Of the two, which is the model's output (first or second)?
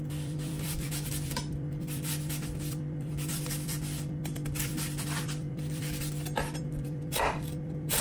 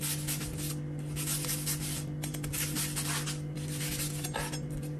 first